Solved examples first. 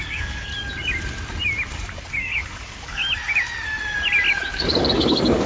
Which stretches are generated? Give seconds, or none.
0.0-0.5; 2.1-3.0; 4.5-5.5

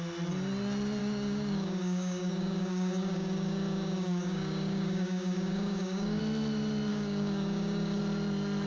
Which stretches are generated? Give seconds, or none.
1.0-6.2; 6.9-8.0

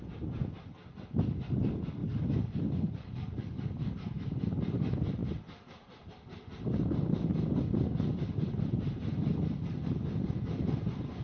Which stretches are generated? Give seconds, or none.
2.0-3.9

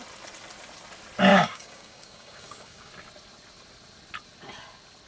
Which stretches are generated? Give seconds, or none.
1.3-2.9

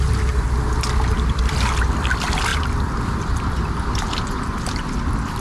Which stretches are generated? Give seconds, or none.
none

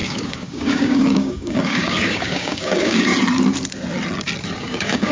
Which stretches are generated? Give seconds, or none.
0.0-3.1; 4.6-5.1

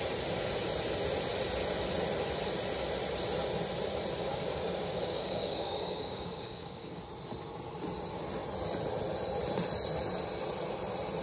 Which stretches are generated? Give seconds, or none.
4.3-7.0